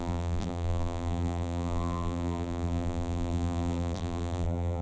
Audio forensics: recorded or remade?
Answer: remade